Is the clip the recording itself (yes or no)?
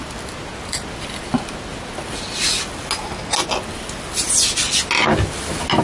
yes